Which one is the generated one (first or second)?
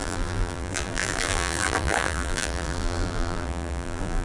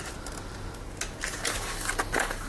first